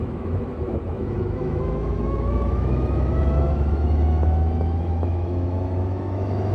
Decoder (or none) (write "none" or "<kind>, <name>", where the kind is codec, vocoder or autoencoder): autoencoder, DAC-VAE